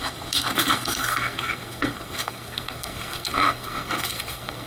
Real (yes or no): no